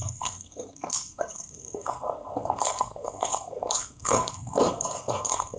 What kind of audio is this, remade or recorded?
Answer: remade